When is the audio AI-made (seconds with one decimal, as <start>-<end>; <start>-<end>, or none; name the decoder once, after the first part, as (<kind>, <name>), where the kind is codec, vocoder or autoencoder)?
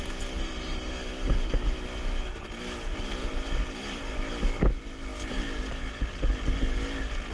none